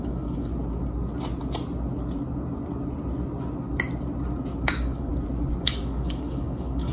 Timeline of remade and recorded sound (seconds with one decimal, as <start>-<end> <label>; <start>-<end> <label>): 0.0-0.5 remade; 0.5-4.6 recorded; 4.6-5.1 remade; 5.1-5.6 recorded; 5.6-6.9 remade